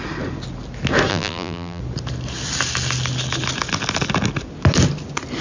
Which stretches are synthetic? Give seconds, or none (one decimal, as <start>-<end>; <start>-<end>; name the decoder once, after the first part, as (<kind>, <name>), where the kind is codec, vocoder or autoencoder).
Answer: 1.1-1.8 (vocoder, BigVGAN v2)